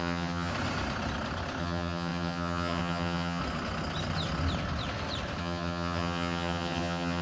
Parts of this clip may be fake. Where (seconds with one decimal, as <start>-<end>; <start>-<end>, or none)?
0.0-0.5; 1.6-3.4; 5.4-7.2